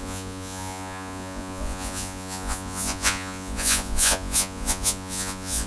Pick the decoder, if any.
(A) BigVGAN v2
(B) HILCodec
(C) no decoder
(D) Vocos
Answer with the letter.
D